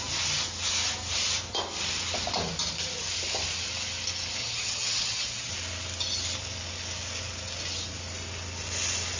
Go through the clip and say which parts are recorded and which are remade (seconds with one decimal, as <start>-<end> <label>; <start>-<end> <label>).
0.0-4.4 recorded; 4.4-5.5 remade; 5.5-9.2 recorded